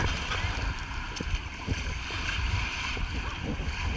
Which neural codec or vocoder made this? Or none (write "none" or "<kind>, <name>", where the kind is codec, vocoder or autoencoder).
none